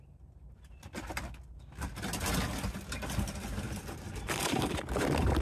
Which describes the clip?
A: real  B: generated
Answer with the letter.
A